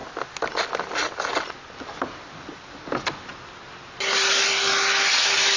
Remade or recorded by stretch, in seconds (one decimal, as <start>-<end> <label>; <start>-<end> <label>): 0.0-5.6 recorded